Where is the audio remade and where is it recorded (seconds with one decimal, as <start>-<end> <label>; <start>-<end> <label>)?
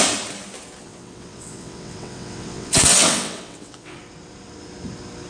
0.0-0.8 recorded; 0.8-4.0 remade; 4.0-5.3 recorded